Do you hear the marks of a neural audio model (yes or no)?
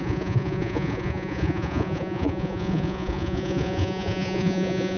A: yes